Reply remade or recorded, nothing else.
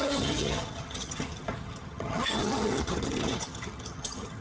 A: remade